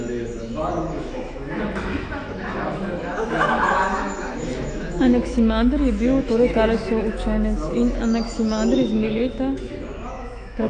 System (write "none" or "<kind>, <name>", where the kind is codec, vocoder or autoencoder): autoencoder, DAC-VAE